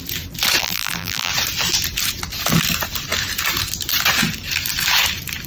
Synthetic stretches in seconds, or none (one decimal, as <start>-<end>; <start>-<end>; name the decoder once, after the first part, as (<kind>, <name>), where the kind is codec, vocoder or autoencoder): 0.6-1.3 (vocoder, BigVGAN v2)